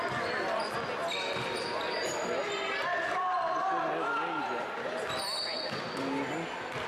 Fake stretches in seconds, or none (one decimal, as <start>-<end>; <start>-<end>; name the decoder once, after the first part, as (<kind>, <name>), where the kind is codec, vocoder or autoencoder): none

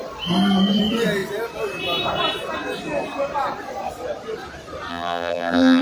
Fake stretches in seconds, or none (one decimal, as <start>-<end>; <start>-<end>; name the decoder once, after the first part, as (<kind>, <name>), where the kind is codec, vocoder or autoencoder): 4.9-5.8 (vocoder, BigVGAN v2)

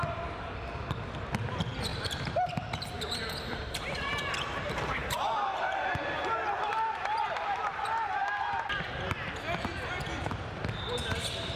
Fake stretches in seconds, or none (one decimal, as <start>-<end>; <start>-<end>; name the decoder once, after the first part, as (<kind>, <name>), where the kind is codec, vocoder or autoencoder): 1.9-5.8 (vocoder, BigVGAN v2)

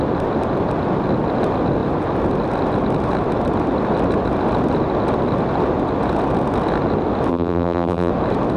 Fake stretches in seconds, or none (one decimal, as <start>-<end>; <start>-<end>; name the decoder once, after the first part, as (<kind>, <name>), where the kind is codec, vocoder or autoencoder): 7.3-8.1 (vocoder, BigVGAN v2)